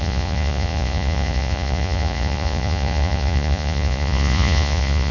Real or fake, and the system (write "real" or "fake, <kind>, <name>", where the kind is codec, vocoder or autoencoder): fake, vocoder, Vocos